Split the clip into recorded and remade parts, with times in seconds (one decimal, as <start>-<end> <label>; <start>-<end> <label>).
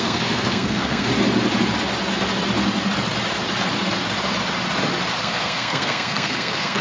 0.0-1.1 remade; 1.1-5.2 recorded; 5.2-6.8 remade